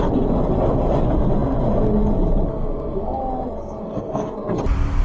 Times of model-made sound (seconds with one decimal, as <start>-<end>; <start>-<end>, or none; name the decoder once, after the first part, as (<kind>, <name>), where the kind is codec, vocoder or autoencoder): 2.5-3.2 (codec, SNAC); 3.6-4.6